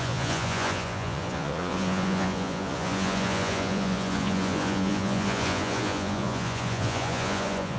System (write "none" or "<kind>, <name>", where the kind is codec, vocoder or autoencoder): vocoder, Vocos